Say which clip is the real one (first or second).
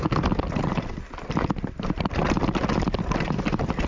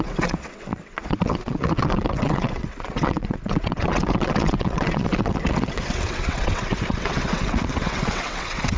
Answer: first